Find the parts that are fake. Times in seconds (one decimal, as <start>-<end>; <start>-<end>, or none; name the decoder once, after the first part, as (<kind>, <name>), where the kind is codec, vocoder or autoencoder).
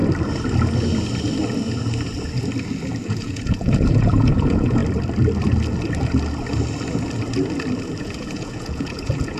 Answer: 3.1-4.8 (vocoder, Vocos); 8.0-9.4